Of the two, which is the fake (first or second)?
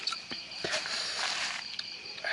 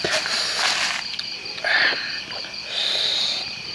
first